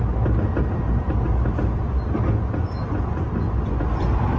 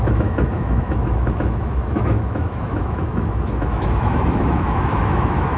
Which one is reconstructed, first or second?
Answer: second